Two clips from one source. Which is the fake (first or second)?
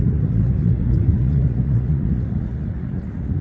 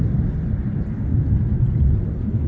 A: first